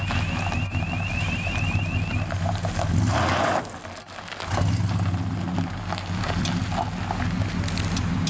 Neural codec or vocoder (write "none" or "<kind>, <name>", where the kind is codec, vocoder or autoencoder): none